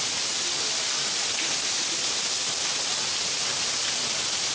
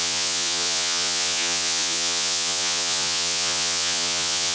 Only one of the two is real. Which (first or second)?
first